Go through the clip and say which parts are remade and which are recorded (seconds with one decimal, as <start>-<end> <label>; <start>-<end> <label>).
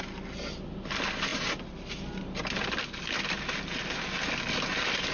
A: 0.0-5.1 recorded